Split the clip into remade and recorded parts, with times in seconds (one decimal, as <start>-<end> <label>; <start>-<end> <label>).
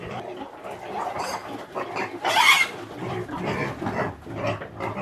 0.0-1.4 recorded; 1.4-2.2 remade; 2.2-5.0 recorded